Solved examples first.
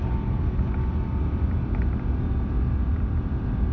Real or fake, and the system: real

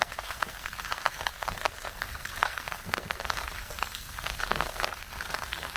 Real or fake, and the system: fake, codec, SNAC